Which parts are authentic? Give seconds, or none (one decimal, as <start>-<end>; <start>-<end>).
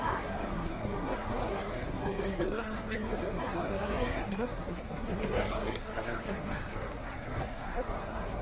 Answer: none